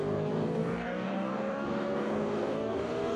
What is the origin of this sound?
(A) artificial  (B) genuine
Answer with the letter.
A